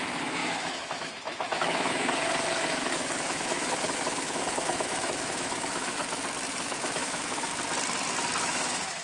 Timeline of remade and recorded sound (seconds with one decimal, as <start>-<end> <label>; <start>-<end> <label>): 0.0-6.0 remade; 6.0-6.5 recorded; 6.5-7.5 remade; 7.5-8.4 recorded; 8.4-9.0 remade